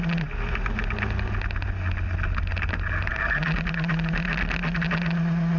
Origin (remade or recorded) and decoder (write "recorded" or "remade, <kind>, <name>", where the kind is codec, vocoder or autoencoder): recorded